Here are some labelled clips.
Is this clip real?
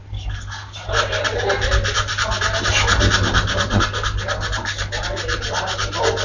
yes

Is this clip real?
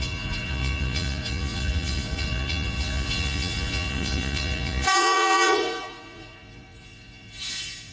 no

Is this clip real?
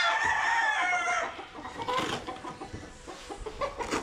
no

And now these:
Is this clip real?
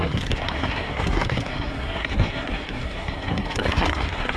no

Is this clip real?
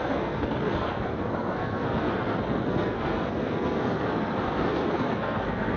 no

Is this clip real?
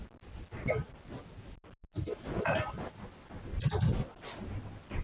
yes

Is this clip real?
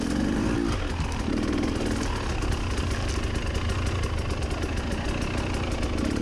yes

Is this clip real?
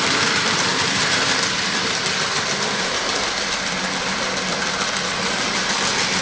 no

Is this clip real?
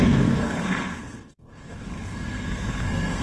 no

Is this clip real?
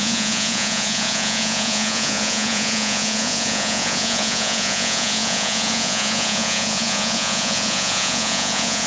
no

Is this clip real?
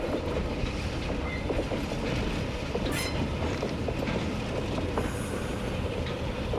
yes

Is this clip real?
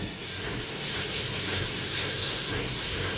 no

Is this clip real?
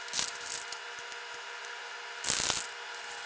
yes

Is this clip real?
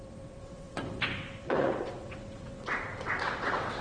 no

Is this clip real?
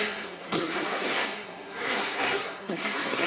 no